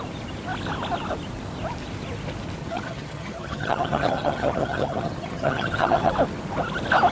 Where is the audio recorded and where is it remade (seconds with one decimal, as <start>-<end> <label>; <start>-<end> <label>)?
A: 0.0-2.6 recorded; 2.6-6.1 remade; 6.1-7.1 recorded